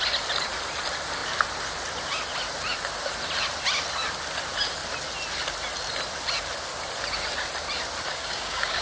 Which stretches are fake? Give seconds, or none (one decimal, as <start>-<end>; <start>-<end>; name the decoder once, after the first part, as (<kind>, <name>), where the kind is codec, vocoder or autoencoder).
8.1-8.8 (codec, DAC)